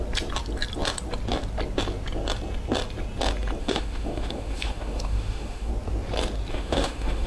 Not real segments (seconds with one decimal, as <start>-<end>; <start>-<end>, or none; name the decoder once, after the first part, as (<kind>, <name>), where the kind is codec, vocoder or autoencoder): 3.6-5.7 (autoencoder, DAC-VAE); 6.5-7.3

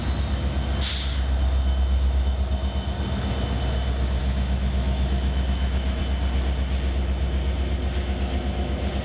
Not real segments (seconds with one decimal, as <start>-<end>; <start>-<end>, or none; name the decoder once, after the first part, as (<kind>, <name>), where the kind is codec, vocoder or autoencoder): 4.2-6.0 (autoencoder, DAC-VAE)

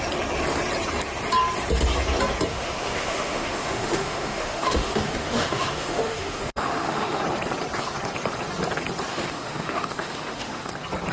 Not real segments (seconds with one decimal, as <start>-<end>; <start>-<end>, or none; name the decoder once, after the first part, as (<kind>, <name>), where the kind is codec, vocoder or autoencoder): 2.5-7.2 (autoencoder, DAC-VAE); 9.1-10.7

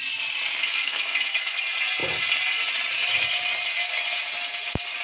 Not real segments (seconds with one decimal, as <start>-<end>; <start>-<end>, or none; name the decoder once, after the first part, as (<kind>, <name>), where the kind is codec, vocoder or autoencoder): 0.6-1.6 (autoencoder, DAC-VAE)